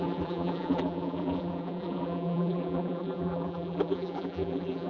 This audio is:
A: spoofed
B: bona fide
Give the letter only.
A